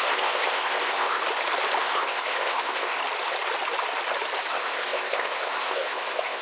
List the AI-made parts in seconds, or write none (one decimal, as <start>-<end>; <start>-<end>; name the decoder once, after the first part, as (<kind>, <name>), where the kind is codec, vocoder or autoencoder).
0.0-1.2 (codec, ZipCodec); 1.8-3.0; 4.5-6.4